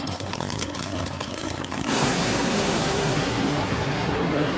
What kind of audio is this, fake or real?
fake